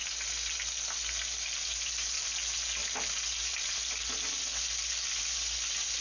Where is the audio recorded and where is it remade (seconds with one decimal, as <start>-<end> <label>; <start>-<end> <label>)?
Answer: 0.0-6.0 recorded